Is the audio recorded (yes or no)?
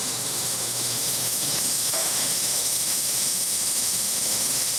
no